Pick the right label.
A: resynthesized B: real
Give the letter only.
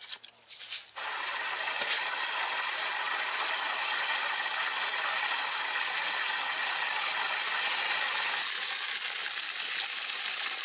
B